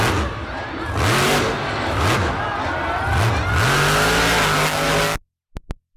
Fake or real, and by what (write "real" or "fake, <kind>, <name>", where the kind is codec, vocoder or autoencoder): real